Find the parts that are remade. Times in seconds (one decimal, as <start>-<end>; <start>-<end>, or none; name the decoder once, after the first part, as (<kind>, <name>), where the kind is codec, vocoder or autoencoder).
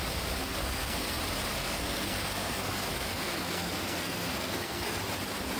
0.6-1.2 (codec, SNAC); 1.6-5.0